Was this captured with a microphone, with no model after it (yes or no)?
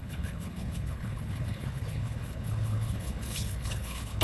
no